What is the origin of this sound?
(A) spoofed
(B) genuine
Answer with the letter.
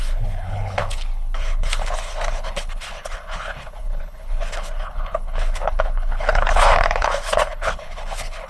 A